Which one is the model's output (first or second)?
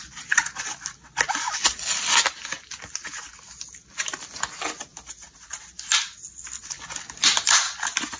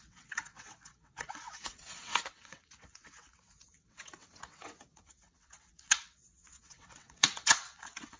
second